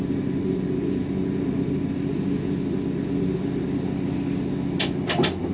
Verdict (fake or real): real